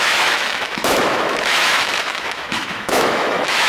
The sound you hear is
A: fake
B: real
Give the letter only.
A